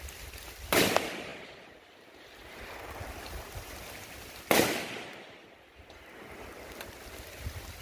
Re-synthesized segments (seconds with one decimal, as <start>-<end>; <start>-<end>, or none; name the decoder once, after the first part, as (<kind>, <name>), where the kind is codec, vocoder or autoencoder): none